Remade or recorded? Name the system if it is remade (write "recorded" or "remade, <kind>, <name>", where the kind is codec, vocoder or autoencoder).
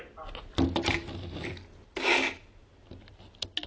recorded